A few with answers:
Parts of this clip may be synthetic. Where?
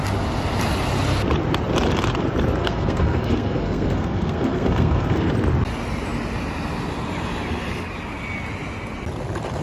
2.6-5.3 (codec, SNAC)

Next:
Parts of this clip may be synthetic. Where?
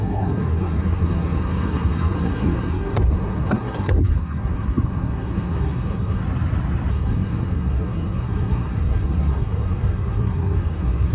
0.0-6.2 (codec, SNAC); 6.9-11.1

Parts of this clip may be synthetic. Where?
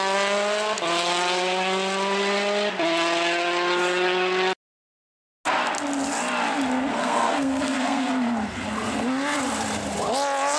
6.9-8.1 (codec, SNAC)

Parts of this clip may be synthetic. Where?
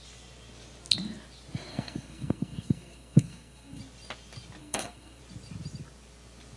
1.7-3.8 (codec, SNAC); 4.6-5.2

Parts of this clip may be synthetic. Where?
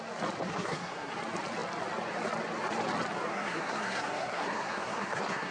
0.5-1.1 (codec, SNAC); 3.3-5.5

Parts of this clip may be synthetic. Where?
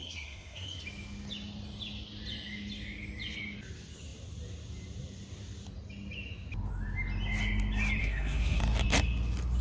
0.0-0.8 (codec, SNAC); 8.0-8.6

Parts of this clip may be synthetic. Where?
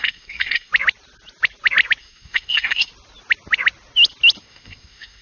0.0-0.7 (codec, SNAC); 2.0-2.9; 4.4-5.2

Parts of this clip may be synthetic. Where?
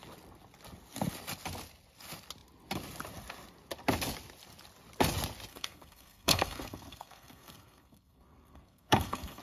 5.5-9.4 (codec, SNAC)